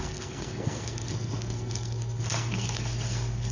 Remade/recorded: remade